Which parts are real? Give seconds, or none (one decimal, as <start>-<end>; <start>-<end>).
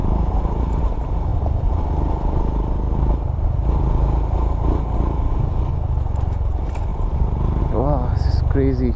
0.0-6.9; 7.6-9.0